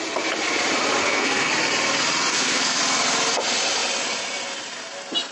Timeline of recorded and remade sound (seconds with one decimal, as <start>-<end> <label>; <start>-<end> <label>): 0.0-1.0 recorded; 1.0-1.5 remade; 1.5-2.3 recorded; 2.3-2.8 remade; 2.8-5.3 recorded